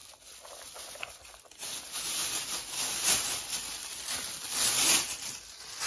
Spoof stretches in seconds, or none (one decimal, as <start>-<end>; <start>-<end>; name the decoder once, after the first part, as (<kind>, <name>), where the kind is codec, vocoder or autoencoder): none

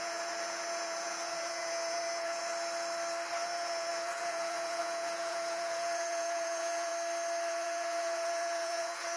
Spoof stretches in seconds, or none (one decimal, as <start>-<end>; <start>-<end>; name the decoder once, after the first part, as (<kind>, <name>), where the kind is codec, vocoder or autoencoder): 0.0-2.5 (vocoder, Vocos); 3.3-6.9; 7.5-9.2

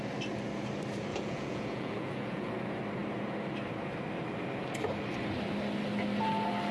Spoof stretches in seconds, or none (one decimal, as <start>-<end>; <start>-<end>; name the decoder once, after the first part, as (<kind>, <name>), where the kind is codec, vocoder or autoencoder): 1.1-2.5 (vocoder, Vocos)

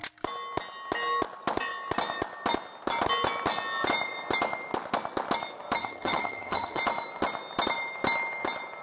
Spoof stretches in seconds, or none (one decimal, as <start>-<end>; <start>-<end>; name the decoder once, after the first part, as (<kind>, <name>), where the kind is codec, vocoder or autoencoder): 5.8-6.8 (vocoder, HiFi-GAN)

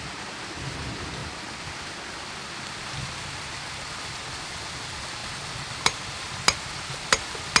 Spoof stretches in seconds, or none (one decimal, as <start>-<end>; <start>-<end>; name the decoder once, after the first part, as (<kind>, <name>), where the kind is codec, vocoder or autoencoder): none

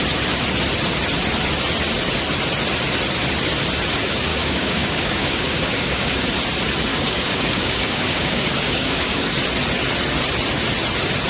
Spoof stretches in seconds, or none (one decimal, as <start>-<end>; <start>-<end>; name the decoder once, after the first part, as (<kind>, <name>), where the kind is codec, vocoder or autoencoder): 4.3-6.2 (codec, DAC); 6.9-9.3

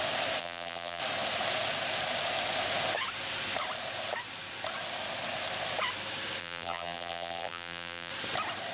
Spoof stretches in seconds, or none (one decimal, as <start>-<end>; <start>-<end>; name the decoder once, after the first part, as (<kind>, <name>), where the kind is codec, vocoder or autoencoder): 0.4-1.0 (vocoder, BigVGAN v2); 6.4-8.1

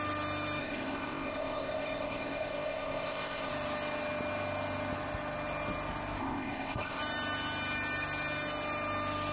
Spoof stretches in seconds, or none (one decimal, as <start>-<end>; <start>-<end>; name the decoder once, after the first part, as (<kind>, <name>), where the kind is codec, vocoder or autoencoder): 0.6-3.5 (codec, ZipCodec); 6.2-7.0